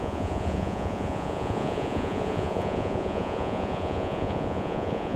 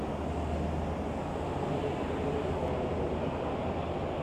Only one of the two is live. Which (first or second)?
second